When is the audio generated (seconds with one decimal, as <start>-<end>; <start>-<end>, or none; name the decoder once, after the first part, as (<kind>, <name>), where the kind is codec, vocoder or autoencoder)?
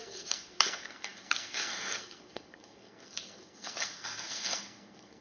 0.0-5.2 (codec, SNAC)